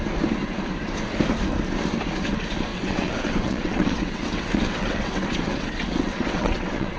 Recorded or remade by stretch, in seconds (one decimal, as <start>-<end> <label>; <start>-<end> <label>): 0.0-2.7 recorded; 2.7-7.0 remade